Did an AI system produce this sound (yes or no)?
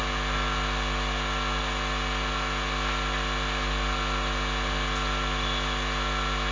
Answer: no